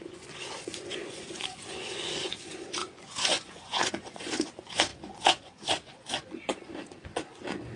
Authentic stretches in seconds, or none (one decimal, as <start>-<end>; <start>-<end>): none